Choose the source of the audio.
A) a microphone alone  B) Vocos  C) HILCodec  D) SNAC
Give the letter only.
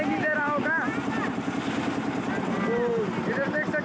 A